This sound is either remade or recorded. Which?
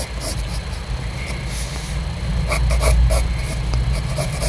recorded